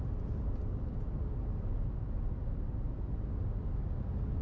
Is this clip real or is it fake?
real